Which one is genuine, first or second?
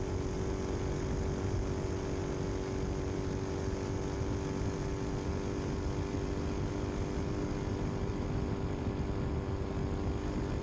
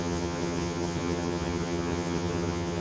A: first